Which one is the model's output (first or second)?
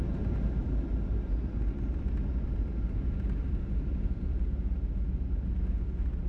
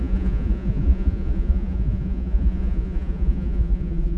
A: second